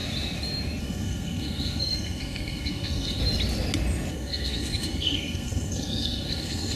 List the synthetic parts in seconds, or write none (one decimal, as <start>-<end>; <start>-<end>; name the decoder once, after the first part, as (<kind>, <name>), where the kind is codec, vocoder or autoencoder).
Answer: 0.8-3.2 (codec, SNAC); 4.1-6.8